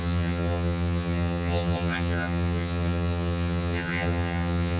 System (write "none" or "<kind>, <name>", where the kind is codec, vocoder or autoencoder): vocoder, HiFi-GAN